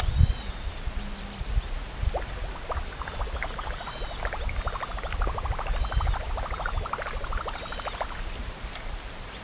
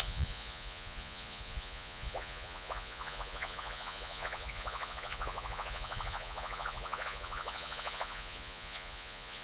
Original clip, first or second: first